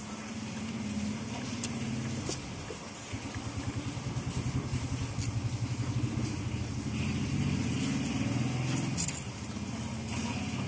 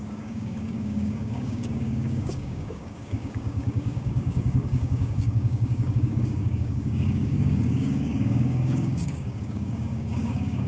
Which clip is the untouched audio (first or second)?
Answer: first